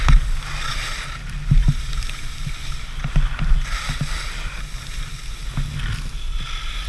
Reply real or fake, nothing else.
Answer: real